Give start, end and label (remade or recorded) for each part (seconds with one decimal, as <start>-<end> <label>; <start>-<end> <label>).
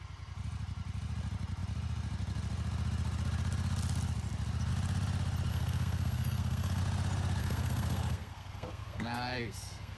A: 0.0-5.5 recorded; 5.5-6.8 remade; 6.8-7.4 recorded; 7.4-10.0 remade